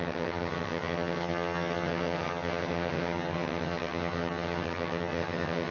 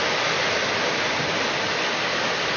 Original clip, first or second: second